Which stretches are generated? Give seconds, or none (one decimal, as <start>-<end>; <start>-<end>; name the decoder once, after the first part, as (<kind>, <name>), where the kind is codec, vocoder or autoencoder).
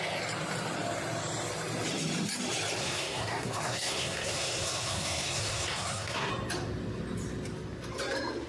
2.8-6.3 (codec, SNAC)